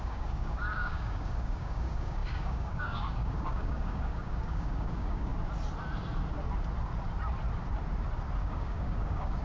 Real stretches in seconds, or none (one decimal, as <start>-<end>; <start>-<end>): 5.3-8.4